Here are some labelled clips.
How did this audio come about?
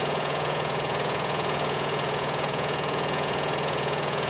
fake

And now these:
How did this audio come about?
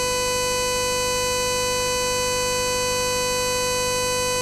real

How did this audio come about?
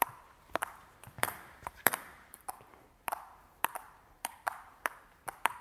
fake